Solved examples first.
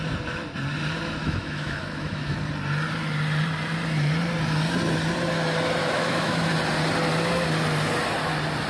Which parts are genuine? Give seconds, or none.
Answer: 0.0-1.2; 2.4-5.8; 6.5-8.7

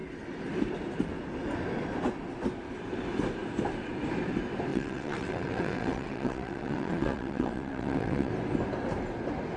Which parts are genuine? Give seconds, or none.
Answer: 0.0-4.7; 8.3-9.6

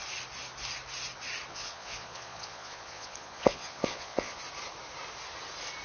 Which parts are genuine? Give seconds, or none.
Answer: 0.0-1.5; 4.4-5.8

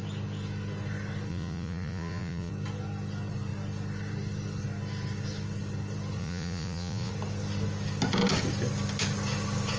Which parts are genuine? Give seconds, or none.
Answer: 0.0-1.3; 2.5-6.2; 7.1-9.8